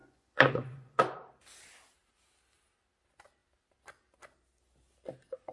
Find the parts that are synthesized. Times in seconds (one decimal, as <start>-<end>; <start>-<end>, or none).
0.0-1.0